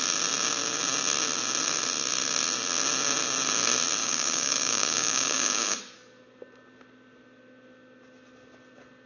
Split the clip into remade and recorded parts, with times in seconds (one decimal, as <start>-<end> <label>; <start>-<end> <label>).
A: 0.0-4.0 recorded; 4.0-5.8 remade; 5.8-9.1 recorded

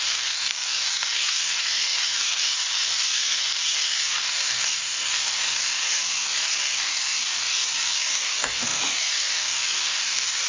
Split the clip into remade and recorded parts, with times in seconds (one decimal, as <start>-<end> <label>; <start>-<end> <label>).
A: 0.0-10.5 remade

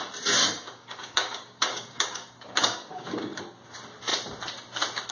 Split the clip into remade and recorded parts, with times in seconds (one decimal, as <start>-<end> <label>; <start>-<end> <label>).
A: 0.0-0.4 recorded; 0.4-3.4 remade; 3.4-5.1 recorded

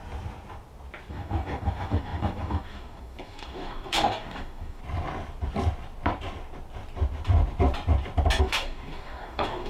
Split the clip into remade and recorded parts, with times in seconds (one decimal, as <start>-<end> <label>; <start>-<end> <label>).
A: 0.0-1.1 recorded; 1.1-4.8 remade; 4.8-8.4 recorded; 8.4-9.7 remade

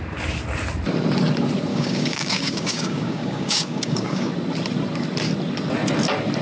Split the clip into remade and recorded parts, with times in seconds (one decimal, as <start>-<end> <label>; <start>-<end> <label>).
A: 0.0-1.7 recorded; 1.7-4.3 remade; 4.3-6.4 recorded

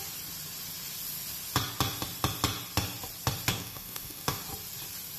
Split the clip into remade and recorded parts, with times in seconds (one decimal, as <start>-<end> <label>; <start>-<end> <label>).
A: 0.0-3.5 recorded; 3.5-4.4 remade; 4.4-5.2 recorded

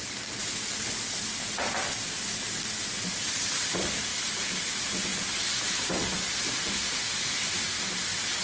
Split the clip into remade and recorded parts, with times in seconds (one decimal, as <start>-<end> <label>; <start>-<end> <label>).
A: 0.0-8.4 recorded